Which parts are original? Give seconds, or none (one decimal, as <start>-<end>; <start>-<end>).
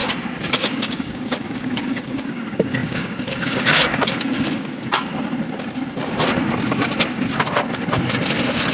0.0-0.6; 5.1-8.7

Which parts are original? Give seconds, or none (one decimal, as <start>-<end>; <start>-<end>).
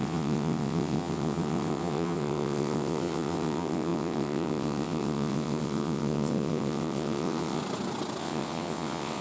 7.6-8.2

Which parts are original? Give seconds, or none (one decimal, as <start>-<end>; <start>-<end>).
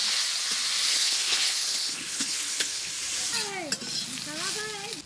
0.0-0.9; 2.9-5.1